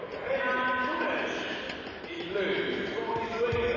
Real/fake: real